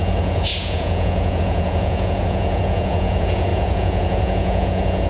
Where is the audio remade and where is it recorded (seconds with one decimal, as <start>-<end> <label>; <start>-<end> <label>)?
0.0-5.1 remade

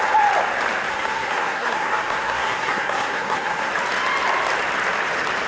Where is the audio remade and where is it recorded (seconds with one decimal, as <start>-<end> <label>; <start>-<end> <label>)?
0.0-0.9 recorded; 0.9-3.7 remade; 3.7-5.5 recorded

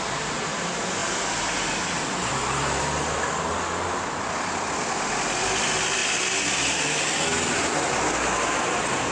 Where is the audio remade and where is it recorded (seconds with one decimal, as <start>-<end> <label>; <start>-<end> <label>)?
0.0-9.1 recorded

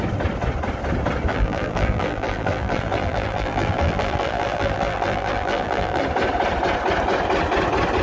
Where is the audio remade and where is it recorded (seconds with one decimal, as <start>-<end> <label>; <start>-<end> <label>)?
0.0-1.3 recorded; 1.3-6.0 remade; 6.0-8.0 recorded

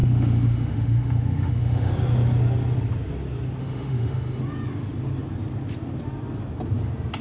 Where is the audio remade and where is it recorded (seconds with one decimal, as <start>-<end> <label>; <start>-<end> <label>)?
0.0-1.9 remade; 1.9-3.6 recorded; 3.6-4.4 remade; 4.4-7.2 recorded

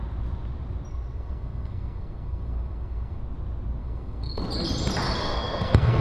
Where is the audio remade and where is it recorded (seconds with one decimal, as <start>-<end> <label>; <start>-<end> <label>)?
0.0-0.9 recorded; 0.9-3.2 remade; 3.2-3.8 recorded; 3.8-4.4 remade; 4.4-5.2 recorded; 5.2-6.0 remade

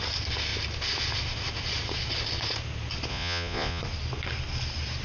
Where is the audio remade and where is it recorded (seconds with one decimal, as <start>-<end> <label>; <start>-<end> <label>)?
0.0-3.1 recorded; 3.1-3.8 remade; 3.8-5.0 recorded

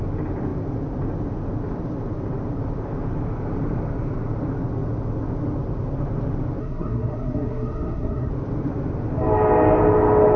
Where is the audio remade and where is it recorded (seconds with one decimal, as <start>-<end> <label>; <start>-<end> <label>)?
0.0-6.6 recorded; 6.6-8.3 remade; 8.3-10.4 recorded